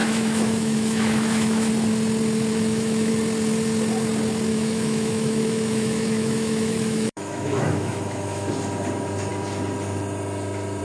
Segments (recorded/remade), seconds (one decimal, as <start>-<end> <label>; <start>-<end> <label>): 0.0-1.7 remade; 1.7-2.5 recorded; 2.5-3.1 remade; 3.1-4.5 recorded; 4.5-8.5 remade; 8.5-10.8 recorded